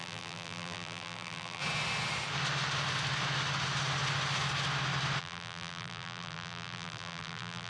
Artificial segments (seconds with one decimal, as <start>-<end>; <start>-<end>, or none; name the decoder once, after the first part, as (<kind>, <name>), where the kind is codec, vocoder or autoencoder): 0.0-1.6 (vocoder, BigVGAN v2); 5.2-7.7